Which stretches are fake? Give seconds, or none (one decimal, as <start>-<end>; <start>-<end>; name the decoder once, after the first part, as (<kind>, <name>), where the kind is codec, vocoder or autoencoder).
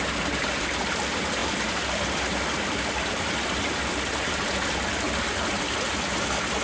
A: 1.4-2.2 (vocoder, BigVGAN v2)